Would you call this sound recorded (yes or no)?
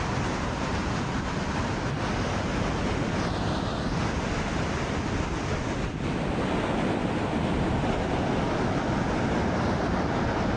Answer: yes